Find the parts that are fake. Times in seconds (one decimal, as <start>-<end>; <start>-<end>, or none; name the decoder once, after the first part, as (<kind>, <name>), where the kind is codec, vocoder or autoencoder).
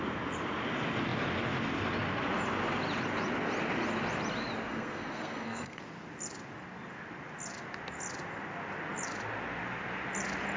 4.7-5.8 (codec, SNAC)